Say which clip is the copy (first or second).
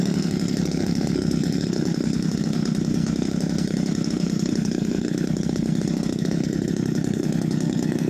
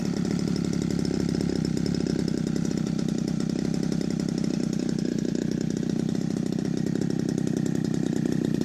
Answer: first